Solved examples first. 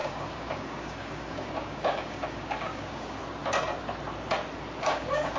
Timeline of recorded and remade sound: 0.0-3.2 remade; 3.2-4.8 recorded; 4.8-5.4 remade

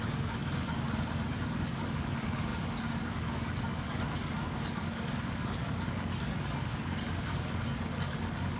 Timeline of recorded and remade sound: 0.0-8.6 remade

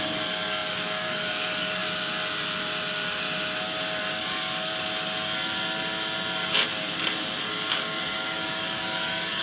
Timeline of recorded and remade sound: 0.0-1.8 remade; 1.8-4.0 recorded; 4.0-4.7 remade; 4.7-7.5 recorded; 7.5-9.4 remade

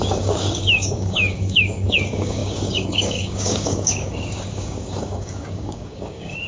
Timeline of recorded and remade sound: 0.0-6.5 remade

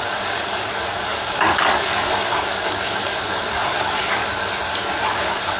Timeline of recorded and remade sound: 0.0-4.2 remade; 4.2-5.1 recorded; 5.1-5.6 remade